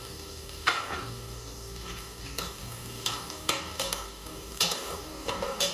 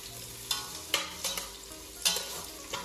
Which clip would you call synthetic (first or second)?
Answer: first